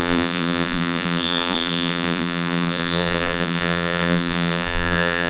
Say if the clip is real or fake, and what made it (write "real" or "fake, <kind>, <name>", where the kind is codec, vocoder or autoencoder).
fake, vocoder, BigVGAN v2